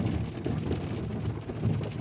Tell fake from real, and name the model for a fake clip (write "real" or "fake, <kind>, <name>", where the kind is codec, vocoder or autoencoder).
real